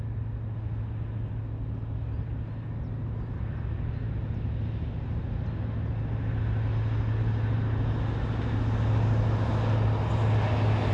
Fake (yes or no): no